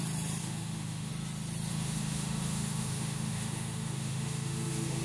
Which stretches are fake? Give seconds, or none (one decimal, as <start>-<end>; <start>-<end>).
0.4-1.1; 1.7-5.0